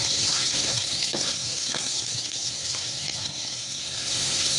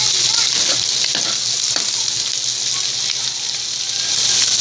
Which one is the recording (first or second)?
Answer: second